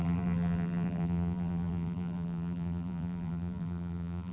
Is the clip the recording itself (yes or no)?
no